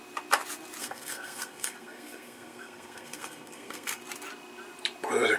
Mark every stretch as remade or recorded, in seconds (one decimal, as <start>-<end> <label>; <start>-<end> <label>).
0.0-0.8 recorded; 0.8-4.0 remade; 4.0-5.4 recorded